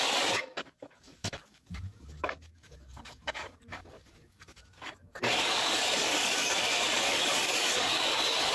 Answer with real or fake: fake